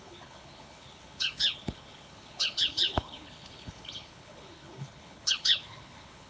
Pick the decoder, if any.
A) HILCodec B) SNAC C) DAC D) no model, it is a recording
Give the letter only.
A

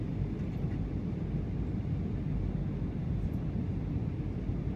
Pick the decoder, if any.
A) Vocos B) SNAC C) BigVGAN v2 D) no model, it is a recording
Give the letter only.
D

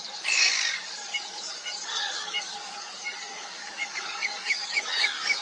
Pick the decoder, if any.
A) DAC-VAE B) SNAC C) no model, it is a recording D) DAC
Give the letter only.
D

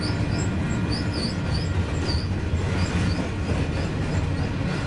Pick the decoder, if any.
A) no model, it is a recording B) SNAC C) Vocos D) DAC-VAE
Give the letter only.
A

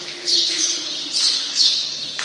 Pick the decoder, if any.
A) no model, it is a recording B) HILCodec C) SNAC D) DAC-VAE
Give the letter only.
B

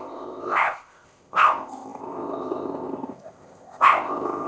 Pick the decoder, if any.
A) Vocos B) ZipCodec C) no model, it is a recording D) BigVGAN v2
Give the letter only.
B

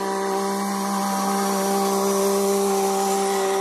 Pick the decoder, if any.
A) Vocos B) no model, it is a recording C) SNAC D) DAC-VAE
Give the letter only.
B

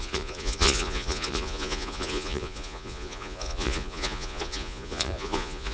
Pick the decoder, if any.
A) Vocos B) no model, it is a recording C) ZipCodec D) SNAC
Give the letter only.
A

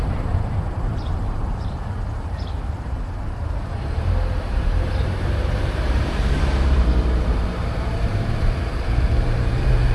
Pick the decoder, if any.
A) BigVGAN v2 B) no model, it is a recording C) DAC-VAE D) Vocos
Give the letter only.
A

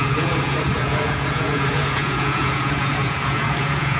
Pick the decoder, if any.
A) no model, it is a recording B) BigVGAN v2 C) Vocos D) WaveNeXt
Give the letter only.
C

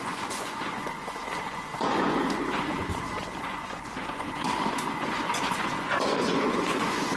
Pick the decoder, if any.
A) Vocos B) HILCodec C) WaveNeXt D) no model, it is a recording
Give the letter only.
A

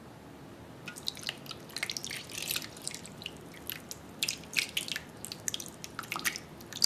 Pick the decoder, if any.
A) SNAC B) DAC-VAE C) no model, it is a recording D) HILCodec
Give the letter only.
C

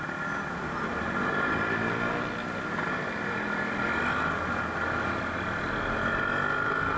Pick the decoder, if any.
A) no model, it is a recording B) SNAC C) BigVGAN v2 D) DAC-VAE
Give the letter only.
A